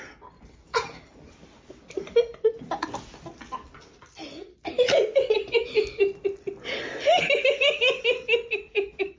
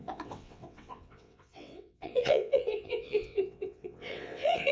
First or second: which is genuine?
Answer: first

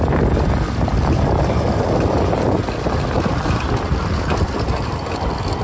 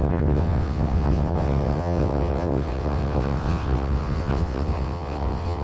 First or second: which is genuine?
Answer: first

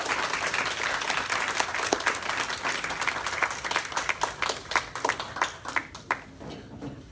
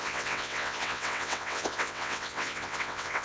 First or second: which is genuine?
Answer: first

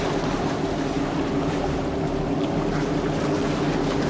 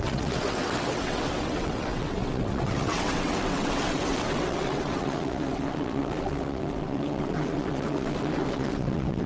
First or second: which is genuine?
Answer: first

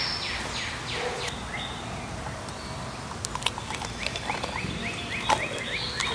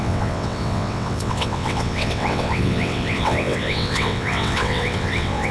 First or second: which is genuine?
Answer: first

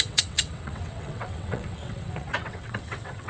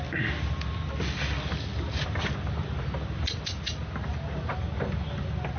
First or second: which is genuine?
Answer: second